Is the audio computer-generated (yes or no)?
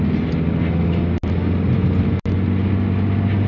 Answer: no